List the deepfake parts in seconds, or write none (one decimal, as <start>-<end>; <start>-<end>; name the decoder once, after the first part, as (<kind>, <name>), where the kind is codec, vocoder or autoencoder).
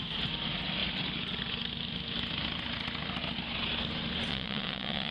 4.3-5.1 (vocoder, WaveNeXt)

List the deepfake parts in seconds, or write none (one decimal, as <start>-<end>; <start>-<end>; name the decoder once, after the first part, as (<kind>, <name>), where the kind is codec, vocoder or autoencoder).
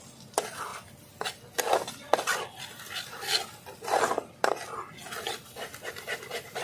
none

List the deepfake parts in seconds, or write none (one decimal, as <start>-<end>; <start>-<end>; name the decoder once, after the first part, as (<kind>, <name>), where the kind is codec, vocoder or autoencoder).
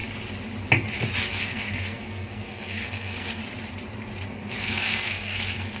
1.2-3.4 (codec, SNAC); 4.3-5.8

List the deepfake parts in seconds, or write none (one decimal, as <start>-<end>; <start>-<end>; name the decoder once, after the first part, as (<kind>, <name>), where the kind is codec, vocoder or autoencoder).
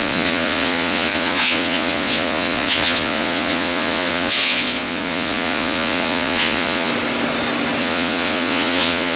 0.0-6.9 (vocoder, Vocos); 7.8-9.2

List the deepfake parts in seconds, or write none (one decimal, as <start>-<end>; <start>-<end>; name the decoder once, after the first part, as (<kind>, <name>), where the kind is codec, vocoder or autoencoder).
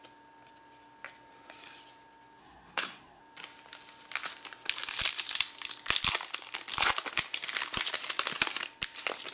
2.4-3.2 (codec, SNAC)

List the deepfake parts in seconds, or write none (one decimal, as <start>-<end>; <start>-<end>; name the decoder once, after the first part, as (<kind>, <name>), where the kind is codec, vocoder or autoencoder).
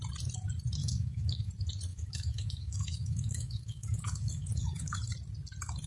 0.8-1.5 (autoencoder, DAC-VAE); 1.9-5.0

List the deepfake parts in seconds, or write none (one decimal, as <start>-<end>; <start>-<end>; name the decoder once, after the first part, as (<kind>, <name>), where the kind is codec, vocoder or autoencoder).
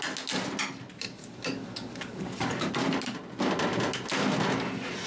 1.2-2.7 (codec, DAC)